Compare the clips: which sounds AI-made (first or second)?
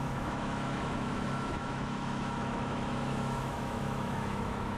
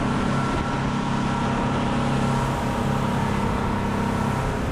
first